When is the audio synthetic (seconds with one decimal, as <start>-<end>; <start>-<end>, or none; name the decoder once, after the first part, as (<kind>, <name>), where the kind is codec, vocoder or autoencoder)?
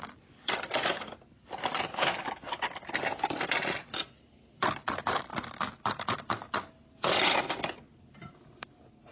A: 1.9-2.5 (codec, DAC)